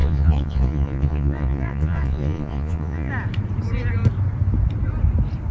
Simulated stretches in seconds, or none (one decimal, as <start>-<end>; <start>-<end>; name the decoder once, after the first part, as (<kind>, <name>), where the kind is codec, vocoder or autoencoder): 0.0-3.1 (vocoder, Vocos)